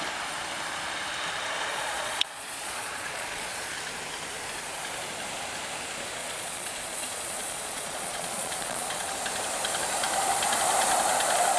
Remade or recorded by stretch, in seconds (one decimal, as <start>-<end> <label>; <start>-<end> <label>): 0.0-1.7 recorded; 1.7-3.7 remade; 3.7-6.2 recorded; 6.2-9.1 remade; 9.1-11.6 recorded